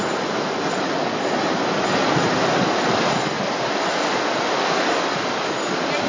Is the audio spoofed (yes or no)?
no